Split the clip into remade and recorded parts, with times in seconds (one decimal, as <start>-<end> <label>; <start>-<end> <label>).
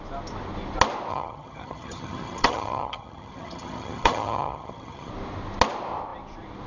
0.0-1.1 recorded; 1.1-5.1 remade; 5.1-6.7 recorded